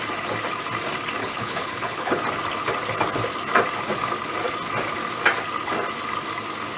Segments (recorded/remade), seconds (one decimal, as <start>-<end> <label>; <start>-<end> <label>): 0.0-1.2 recorded; 1.2-2.2 remade; 2.2-6.8 recorded